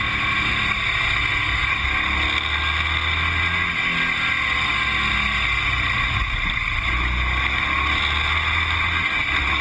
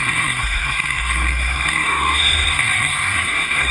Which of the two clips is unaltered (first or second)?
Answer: first